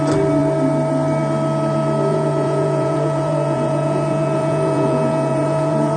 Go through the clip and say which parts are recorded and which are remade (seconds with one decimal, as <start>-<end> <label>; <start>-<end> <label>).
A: 0.0-2.1 recorded; 2.1-6.0 remade